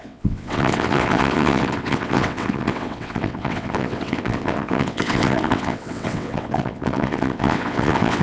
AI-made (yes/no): yes